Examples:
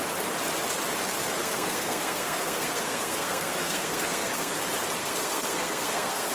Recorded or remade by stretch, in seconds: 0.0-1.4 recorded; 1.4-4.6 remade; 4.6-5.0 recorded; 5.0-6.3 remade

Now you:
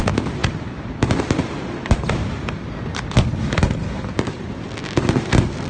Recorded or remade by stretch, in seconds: 0.0-5.7 recorded

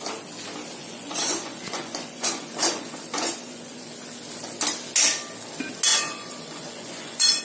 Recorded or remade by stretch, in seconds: 0.0-0.8 recorded; 0.8-3.9 remade; 3.9-5.9 recorded; 5.9-7.4 remade

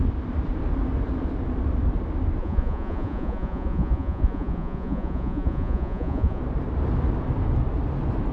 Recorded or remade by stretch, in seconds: 0.0-2.4 recorded; 2.4-6.4 remade; 6.4-8.3 recorded

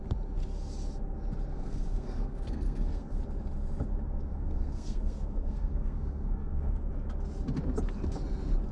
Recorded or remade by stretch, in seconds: 0.0-1.5 recorded; 1.5-3.2 remade; 3.2-4.3 recorded; 4.3-6.9 remade; 6.9-8.7 recorded

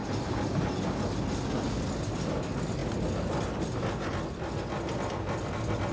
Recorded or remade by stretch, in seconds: 0.0-5.9 recorded

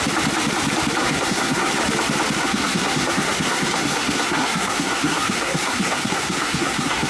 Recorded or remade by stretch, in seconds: 0.0-1.0 recorded; 1.0-1.7 remade; 1.7-2.4 recorded; 2.4-7.1 remade

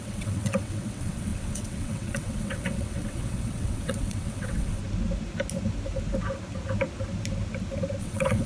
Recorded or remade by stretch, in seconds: 0.0-4.8 remade; 4.8-8.0 recorded; 8.0-8.5 remade